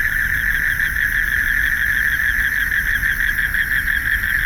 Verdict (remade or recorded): recorded